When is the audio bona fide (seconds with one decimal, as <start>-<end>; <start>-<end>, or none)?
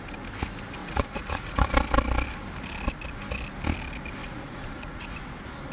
0.0-0.8; 1.7-4.2; 5.1-5.7